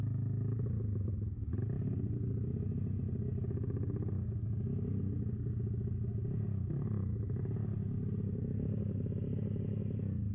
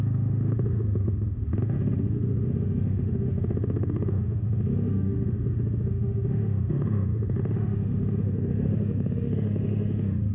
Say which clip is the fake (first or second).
second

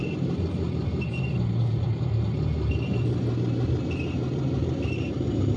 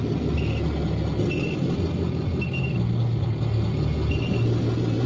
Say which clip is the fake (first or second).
first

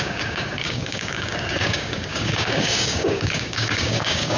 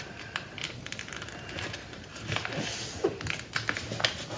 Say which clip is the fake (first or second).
first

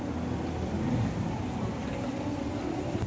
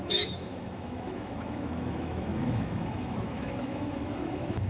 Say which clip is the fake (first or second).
second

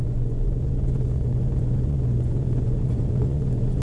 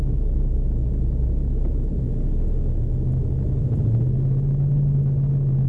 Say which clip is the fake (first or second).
first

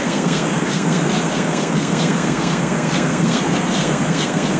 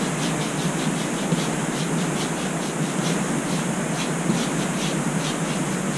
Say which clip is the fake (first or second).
first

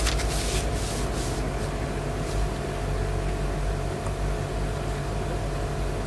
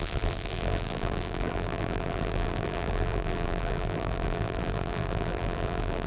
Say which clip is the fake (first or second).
second